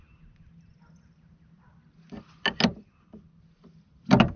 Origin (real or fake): real